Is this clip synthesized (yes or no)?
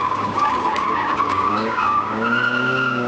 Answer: yes